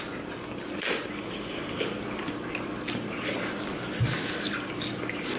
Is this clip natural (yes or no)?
yes